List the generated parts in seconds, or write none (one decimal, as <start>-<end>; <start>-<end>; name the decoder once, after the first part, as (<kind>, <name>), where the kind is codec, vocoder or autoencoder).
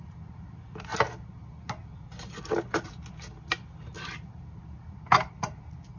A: 0.0-0.9 (vocoder, BigVGAN v2); 4.3-6.0